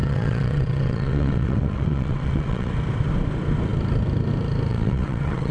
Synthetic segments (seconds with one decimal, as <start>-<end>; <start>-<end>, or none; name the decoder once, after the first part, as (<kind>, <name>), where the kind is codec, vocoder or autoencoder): 0.0-2.7 (vocoder, WaveNeXt); 4.7-5.5